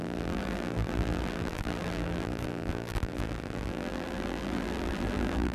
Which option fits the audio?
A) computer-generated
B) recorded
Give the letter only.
A